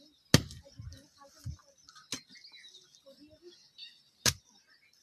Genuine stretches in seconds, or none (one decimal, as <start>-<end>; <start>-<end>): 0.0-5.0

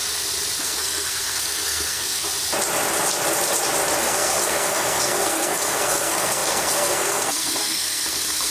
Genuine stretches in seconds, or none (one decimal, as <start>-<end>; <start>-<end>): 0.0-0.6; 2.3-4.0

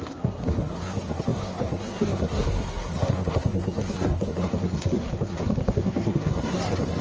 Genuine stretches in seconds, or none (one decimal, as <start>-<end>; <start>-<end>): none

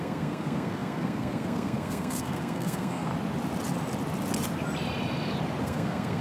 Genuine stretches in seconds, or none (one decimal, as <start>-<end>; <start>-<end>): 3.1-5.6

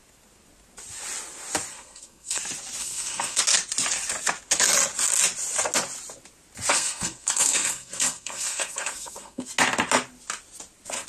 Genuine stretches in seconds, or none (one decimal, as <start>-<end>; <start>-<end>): 0.0-1.7; 2.4-2.8; 3.4-6.7; 9.5-11.1

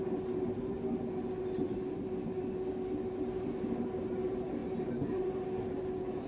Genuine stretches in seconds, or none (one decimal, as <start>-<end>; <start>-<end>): 0.0-6.3

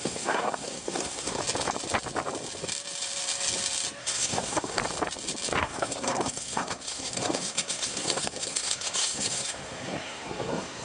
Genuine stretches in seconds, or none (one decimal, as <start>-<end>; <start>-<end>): 1.4-4.0; 4.8-5.6